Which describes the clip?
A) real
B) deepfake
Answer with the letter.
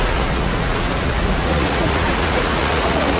B